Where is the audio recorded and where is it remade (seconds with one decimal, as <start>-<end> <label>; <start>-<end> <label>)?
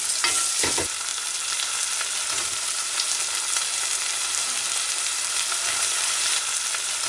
0.0-7.1 recorded